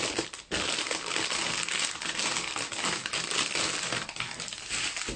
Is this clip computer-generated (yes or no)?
no